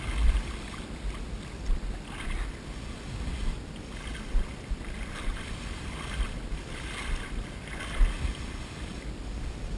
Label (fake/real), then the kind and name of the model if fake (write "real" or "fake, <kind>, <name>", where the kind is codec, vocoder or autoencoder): real